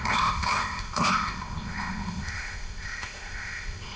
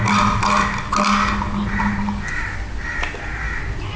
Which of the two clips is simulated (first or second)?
first